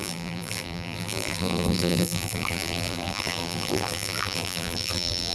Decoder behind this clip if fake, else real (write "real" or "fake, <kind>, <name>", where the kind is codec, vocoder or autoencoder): fake, vocoder, BigVGAN v2